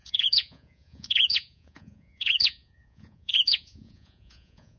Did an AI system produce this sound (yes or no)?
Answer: yes